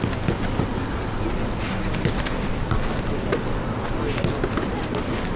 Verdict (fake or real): real